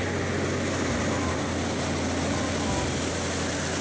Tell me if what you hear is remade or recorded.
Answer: recorded